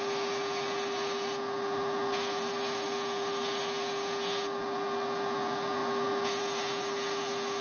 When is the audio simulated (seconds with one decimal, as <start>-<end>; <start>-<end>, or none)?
none